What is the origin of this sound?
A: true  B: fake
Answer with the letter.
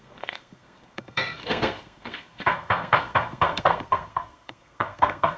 B